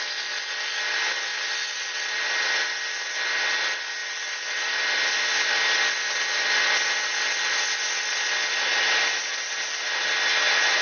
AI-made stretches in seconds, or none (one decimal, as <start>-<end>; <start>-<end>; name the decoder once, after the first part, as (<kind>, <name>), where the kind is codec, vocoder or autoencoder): 1.3-3.4 (vocoder, BigVGAN v2); 4.0-4.7; 5.3-9.8